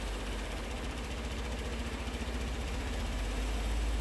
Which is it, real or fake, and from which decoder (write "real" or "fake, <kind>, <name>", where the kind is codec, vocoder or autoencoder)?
real